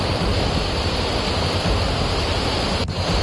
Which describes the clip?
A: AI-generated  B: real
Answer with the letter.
B